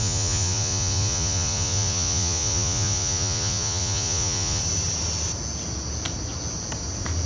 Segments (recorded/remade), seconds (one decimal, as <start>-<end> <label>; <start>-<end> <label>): 0.0-4.6 remade; 4.6-7.3 recorded